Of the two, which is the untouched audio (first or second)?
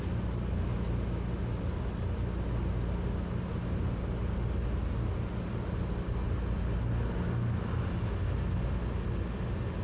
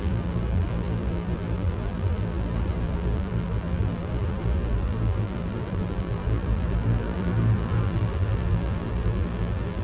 first